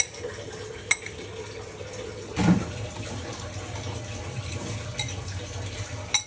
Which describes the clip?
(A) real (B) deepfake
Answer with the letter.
A